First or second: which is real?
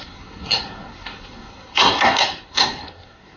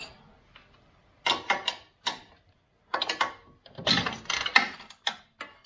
second